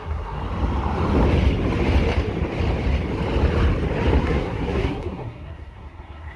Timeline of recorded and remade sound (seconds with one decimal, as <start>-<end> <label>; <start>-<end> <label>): 0.0-0.4 remade; 0.4-4.2 recorded; 4.2-6.4 remade